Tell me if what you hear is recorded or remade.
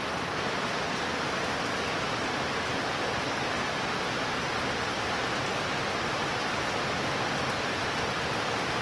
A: remade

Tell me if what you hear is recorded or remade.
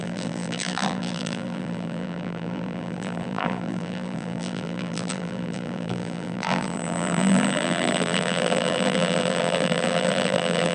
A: remade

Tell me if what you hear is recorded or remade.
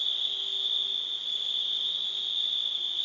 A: recorded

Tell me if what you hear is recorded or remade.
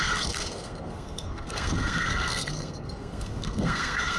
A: remade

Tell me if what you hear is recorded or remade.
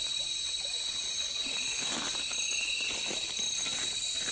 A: recorded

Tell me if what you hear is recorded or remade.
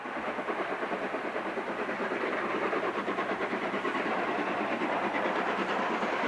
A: recorded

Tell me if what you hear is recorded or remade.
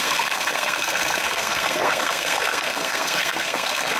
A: remade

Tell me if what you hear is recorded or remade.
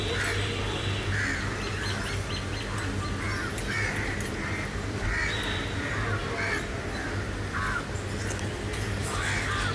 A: recorded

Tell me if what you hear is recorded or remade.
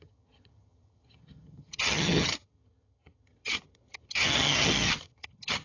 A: remade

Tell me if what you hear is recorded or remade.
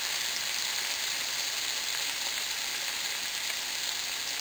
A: recorded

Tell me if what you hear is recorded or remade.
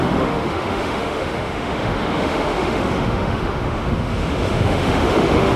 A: remade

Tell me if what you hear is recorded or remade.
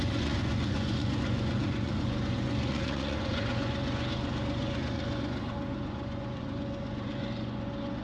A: remade